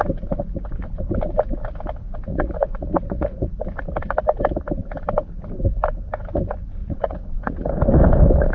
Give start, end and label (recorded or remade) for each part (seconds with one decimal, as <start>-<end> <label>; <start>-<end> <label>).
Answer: 0.0-2.3 recorded; 2.3-3.5 remade; 3.5-6.8 recorded; 6.8-7.7 remade; 7.7-8.5 recorded

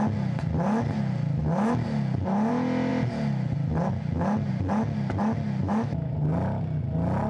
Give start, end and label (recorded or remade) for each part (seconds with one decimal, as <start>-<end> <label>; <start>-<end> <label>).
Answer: 0.0-5.6 recorded; 5.6-6.1 remade; 6.1-7.3 recorded

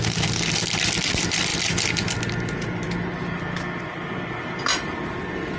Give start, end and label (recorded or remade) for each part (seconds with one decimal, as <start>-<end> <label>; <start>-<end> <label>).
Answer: 0.0-5.6 recorded

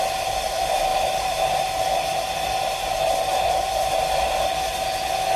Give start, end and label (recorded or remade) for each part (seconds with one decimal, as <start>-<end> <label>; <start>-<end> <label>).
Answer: 0.0-0.9 recorded; 0.9-3.9 remade; 3.9-5.4 recorded

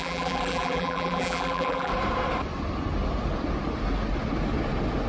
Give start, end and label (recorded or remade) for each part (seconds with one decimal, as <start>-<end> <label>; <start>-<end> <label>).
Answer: 0.0-1.9 remade; 1.9-5.1 recorded

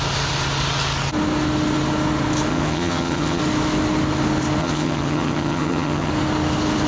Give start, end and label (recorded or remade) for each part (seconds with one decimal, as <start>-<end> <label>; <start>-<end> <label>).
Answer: 0.0-2.5 recorded; 2.5-3.4 remade; 3.4-4.6 recorded; 4.6-6.1 remade; 6.1-6.9 recorded